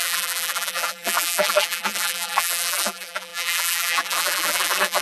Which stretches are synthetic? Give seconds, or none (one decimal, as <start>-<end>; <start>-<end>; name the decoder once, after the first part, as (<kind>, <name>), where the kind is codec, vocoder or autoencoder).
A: 0.0-5.0 (vocoder, BigVGAN v2)